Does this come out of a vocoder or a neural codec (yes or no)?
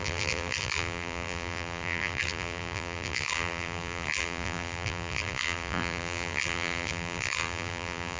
yes